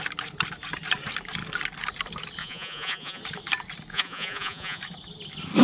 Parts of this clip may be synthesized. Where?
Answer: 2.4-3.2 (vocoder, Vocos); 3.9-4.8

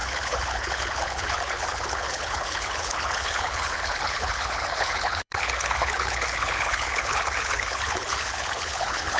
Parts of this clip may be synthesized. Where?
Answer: 0.0-9.2 (codec, HILCodec)

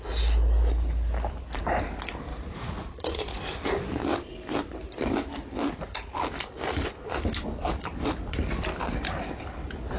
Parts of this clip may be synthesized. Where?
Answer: 2.3-3.4 (vocoder, Vocos)

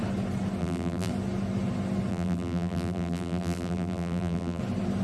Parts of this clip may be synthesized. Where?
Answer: 0.6-1.1 (vocoder, BigVGAN v2); 2.1-4.6

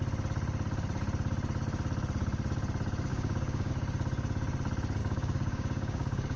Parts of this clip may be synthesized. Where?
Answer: 3.1-3.7 (codec, DAC); 5.0-6.4

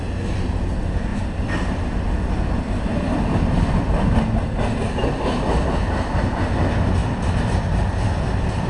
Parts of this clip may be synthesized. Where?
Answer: none

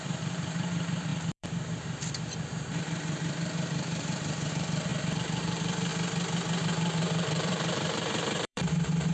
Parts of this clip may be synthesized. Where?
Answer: 0.0-5.9 (vocoder, BigVGAN v2); 6.6-9.1